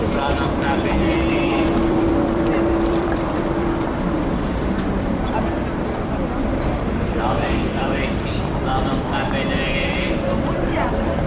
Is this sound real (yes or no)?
no